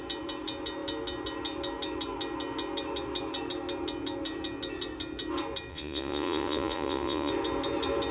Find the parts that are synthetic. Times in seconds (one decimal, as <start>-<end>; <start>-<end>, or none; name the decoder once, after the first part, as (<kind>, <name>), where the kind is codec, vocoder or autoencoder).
5.7-7.3 (vocoder, Vocos)